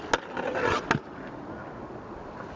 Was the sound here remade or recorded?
recorded